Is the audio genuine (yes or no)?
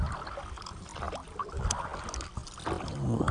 yes